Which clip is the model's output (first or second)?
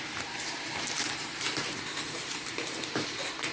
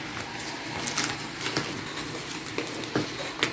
first